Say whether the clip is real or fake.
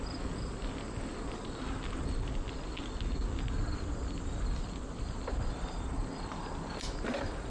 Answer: real